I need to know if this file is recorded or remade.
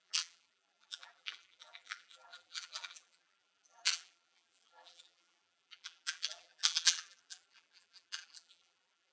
remade